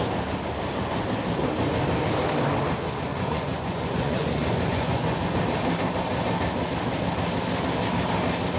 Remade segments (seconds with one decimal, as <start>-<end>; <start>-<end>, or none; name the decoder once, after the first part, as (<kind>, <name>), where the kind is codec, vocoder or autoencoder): 3.1-5.4 (vocoder, Vocos)